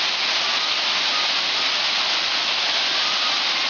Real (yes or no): yes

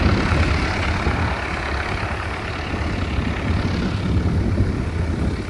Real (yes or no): yes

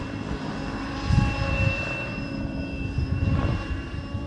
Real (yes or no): no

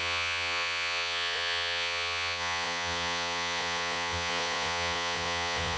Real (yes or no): no